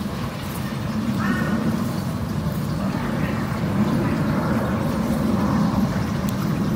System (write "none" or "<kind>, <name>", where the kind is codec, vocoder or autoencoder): vocoder, BigVGAN v2